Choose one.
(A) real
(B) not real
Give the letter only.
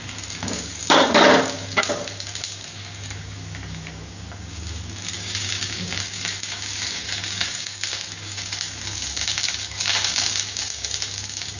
B